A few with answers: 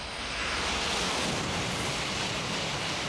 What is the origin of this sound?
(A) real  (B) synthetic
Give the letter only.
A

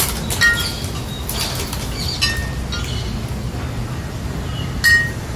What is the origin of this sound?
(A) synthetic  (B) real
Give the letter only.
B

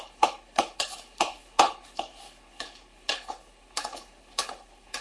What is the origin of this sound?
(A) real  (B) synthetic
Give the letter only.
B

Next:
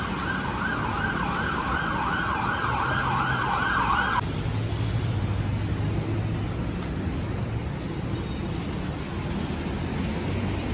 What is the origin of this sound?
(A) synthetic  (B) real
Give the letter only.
B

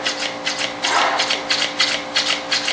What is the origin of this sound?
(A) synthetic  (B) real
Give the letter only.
B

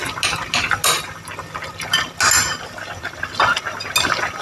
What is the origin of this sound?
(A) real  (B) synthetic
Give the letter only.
A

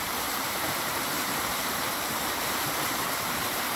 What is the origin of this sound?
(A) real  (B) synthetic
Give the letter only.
B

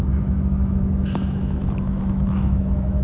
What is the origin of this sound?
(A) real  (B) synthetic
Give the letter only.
B